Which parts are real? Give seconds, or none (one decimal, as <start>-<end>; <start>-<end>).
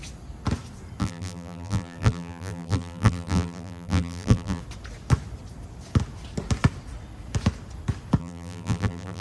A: 0.0-1.0; 4.6-8.2